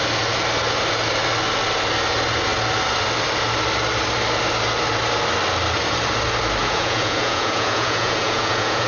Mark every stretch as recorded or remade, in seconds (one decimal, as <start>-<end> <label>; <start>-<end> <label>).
0.0-6.6 recorded; 6.6-8.9 remade